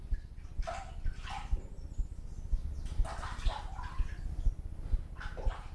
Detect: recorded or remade recorded